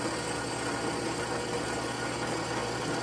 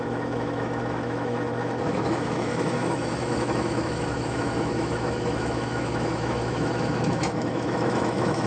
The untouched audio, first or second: first